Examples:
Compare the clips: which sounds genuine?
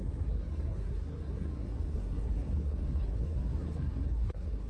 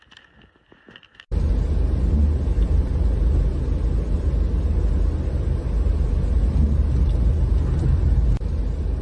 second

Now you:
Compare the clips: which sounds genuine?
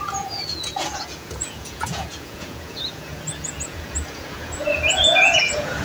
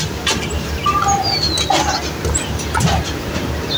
second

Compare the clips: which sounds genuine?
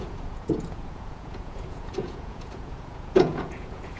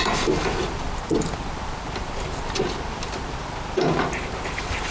second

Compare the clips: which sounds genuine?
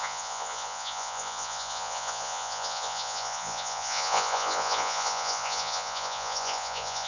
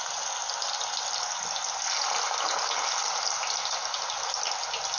second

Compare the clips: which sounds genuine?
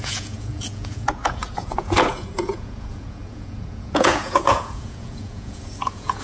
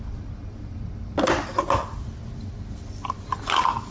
second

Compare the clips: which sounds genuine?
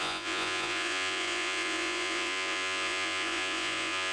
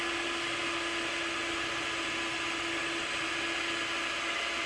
second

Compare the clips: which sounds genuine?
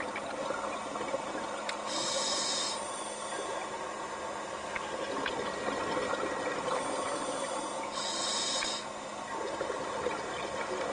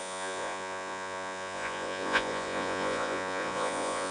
first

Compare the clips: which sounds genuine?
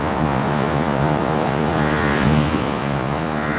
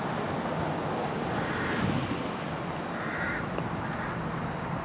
second